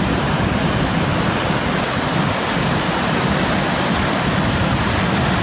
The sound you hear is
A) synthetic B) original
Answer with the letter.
B